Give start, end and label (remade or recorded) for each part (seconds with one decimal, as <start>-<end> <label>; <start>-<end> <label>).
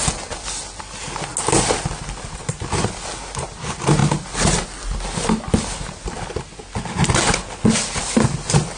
0.0-8.8 recorded